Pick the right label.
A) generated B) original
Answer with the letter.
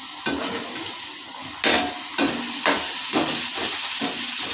B